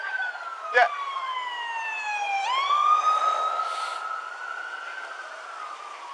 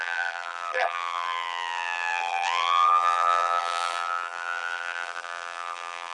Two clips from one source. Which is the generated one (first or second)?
second